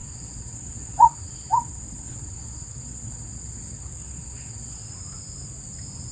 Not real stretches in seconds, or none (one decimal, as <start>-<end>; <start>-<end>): 0.0-4.8